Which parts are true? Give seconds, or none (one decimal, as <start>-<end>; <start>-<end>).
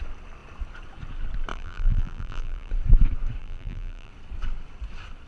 0.0-1.5; 2.7-3.4; 4.1-5.3